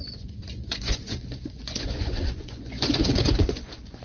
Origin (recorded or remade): remade